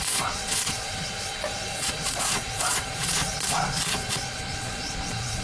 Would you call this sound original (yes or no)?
no